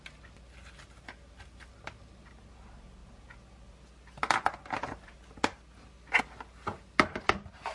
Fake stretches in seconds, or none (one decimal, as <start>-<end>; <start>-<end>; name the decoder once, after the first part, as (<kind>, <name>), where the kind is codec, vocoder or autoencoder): none